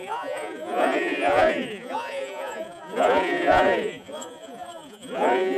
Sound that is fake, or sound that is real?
fake